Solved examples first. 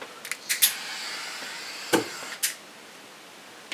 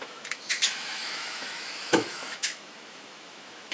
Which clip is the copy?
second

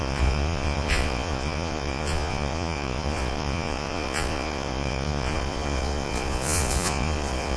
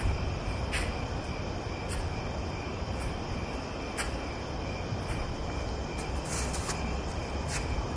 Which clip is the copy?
first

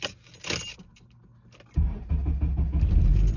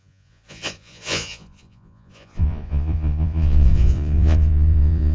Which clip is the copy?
second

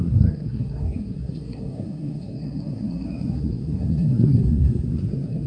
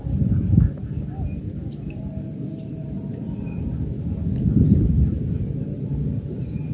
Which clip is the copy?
first